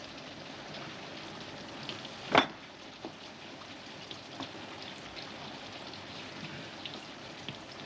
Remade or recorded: recorded